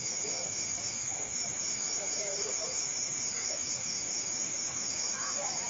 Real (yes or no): no